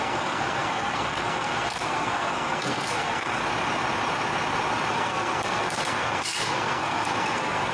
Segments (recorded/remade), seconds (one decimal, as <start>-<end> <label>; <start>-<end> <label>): 0.0-3.4 remade; 3.4-4.9 recorded; 4.9-7.7 remade